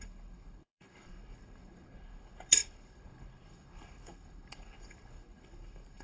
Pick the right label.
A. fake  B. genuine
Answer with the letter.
A